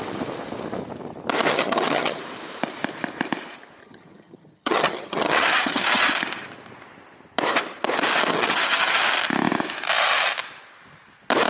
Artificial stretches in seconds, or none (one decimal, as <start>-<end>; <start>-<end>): 1.5-2.2; 3.8-6.1; 8.3-9.0